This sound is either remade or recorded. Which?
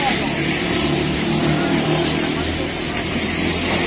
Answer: recorded